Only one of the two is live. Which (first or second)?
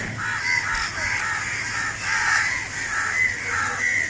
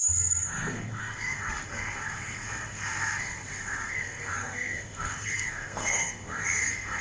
first